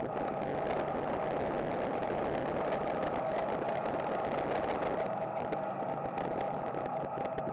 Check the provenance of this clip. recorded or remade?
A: recorded